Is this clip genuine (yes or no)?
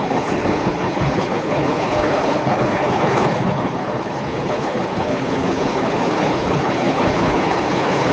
no